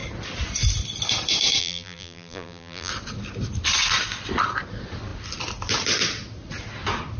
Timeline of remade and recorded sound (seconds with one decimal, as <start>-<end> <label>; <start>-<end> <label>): 0.0-1.6 recorded; 1.6-2.9 remade; 2.9-7.2 recorded